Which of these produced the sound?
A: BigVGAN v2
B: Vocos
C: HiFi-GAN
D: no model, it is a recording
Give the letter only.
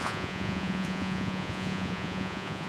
B